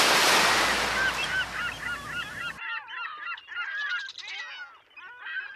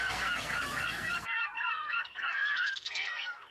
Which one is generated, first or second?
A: second